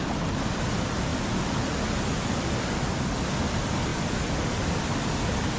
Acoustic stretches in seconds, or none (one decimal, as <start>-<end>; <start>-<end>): 0.0-5.6